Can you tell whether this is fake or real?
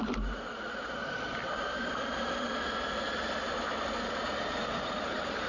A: real